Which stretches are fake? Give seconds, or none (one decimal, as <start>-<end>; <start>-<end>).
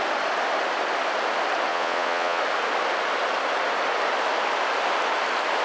1.7-2.4